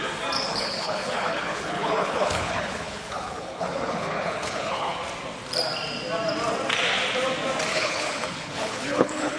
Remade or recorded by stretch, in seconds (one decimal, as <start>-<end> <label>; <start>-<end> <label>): 0.0-0.5 recorded; 0.5-5.0 remade; 5.0-7.7 recorded; 7.7-9.4 remade